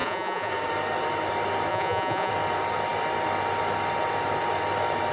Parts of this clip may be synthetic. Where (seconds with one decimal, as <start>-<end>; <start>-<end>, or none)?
0.0-0.5; 1.7-2.3